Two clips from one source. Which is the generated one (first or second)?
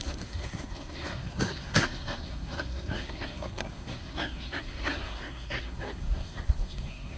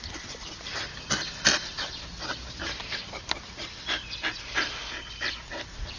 first